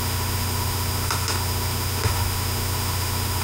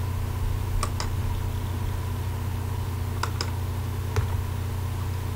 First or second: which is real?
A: second